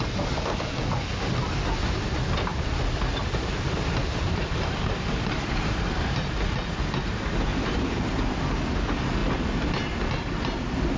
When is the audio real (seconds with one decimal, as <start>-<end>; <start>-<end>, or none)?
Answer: 0.0-2.5; 6.8-7.5; 8.0-11.0